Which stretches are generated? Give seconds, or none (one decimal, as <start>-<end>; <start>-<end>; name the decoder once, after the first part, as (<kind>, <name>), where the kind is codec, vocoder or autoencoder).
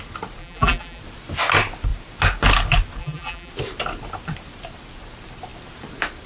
0.4-1.0 (vocoder, BigVGAN v2); 3.0-3.5